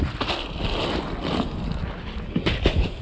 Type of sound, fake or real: real